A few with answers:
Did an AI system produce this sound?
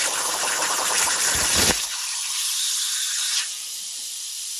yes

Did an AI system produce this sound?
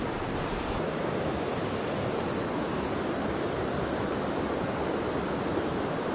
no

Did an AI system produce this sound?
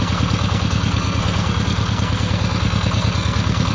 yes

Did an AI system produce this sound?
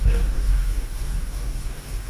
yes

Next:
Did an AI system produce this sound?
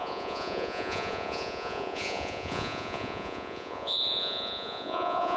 yes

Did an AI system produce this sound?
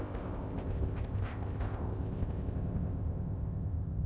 yes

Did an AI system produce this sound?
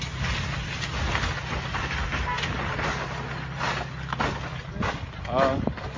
no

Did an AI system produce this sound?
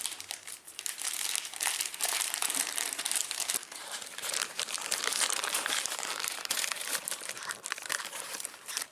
yes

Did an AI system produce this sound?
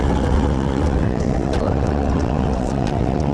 yes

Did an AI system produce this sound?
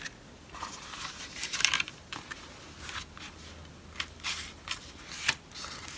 no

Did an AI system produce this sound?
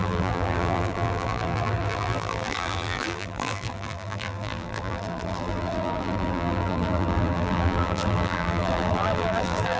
yes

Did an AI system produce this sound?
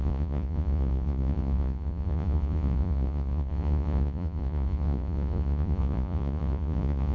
yes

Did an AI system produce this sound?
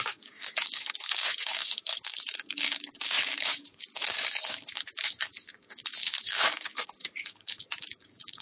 yes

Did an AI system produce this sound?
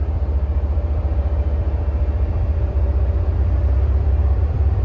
yes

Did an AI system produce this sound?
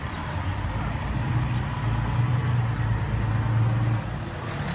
no